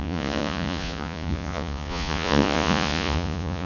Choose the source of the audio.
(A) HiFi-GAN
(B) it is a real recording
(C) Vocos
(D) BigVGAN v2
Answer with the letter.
C